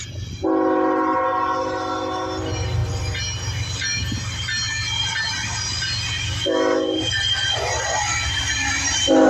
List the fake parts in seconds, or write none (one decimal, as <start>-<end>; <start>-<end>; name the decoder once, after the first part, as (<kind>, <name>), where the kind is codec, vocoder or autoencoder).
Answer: none